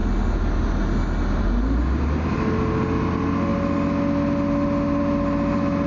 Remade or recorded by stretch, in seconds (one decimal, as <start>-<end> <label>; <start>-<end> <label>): 0.0-5.9 recorded